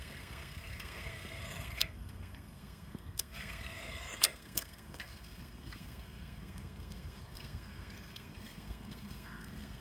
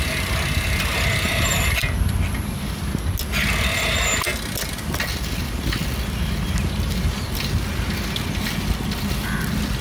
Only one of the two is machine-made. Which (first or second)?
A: first